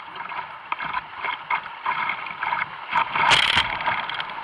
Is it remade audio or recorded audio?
recorded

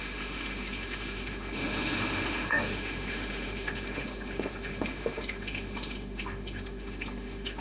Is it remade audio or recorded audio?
remade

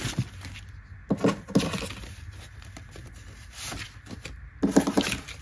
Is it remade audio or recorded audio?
recorded